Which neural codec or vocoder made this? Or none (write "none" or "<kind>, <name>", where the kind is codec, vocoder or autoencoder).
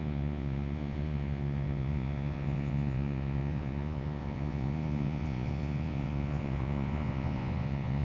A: vocoder, Vocos